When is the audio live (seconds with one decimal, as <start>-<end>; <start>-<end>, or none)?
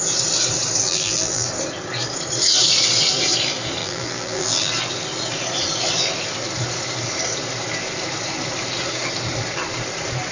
0.0-0.8; 1.5-3.8; 4.7-10.3